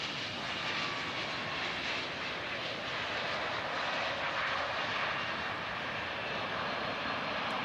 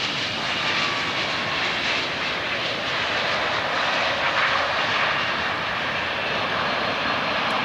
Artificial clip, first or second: second